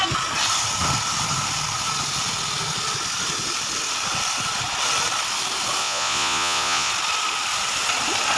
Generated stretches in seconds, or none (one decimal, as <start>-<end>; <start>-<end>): 5.8-6.9